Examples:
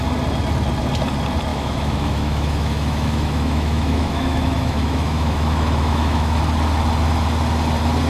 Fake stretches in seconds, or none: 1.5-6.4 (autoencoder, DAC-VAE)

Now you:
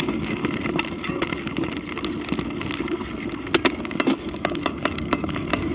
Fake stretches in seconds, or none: 0.0-0.4 (codec, DAC); 3.8-5.7

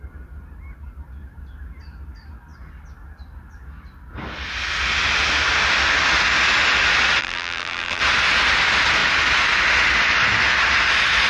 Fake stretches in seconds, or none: 7.2-8.0 (vocoder, BigVGAN v2)